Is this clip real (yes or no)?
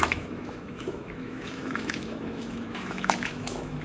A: no